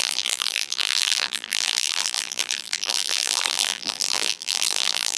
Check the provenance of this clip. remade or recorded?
remade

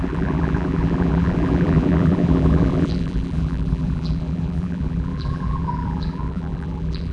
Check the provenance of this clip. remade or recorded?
remade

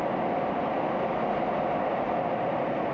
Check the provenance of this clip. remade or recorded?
recorded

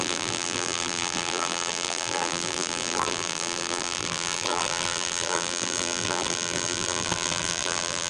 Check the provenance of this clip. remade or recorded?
remade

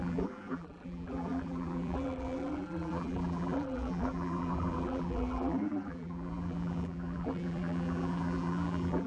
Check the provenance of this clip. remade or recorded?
remade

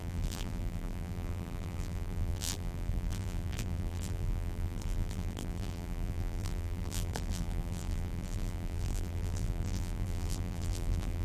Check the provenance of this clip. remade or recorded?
remade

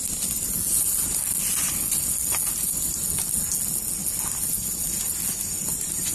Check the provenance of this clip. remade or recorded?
recorded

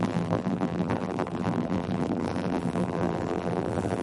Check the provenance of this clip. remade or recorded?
remade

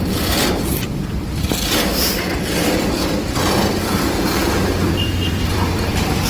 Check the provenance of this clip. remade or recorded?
remade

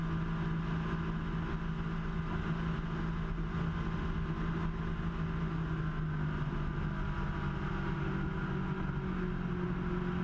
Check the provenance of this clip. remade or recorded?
recorded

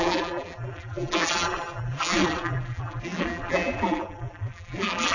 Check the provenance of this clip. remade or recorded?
remade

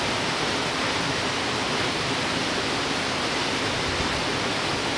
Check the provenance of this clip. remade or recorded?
recorded